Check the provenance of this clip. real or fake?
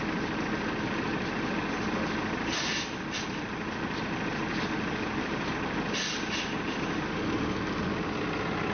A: real